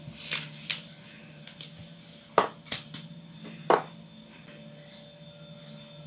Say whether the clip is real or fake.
real